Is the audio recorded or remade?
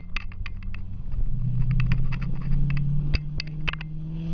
recorded